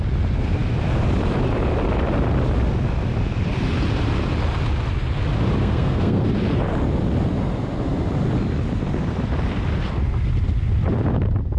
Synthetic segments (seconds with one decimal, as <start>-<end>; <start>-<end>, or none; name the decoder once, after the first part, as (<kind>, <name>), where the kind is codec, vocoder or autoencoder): 5.6-6.3 (codec, SNAC)